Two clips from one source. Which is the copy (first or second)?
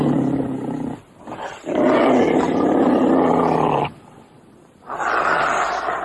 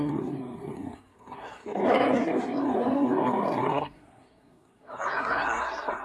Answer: second